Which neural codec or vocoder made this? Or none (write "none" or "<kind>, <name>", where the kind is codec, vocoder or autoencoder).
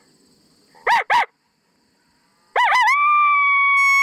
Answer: none